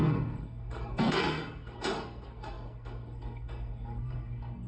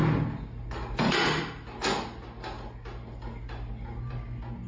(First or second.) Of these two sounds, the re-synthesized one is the first